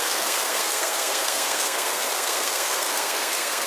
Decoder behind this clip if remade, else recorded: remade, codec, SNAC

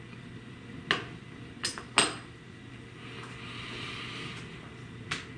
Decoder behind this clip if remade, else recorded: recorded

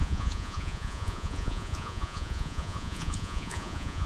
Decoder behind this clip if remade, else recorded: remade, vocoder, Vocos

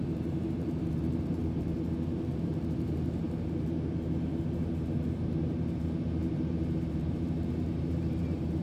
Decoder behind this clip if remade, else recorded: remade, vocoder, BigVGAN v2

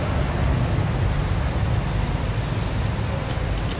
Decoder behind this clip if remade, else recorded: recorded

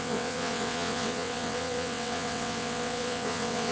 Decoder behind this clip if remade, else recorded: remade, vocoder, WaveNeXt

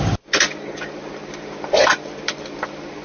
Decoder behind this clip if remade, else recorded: recorded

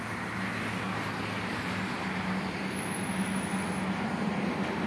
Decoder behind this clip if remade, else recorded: recorded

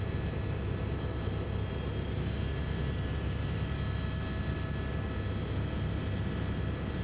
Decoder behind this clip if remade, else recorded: recorded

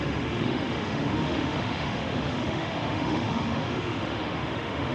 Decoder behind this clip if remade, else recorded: remade, autoencoder, DAC-VAE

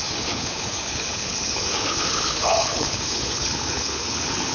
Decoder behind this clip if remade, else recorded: remade, codec, HILCodec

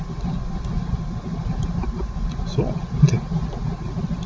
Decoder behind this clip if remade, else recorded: recorded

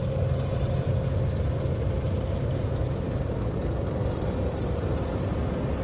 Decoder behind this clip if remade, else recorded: recorded